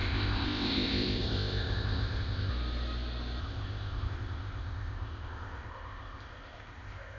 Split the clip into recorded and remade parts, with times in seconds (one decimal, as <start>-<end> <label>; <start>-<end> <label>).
0.0-2.5 remade; 2.5-3.4 recorded; 3.4-7.2 remade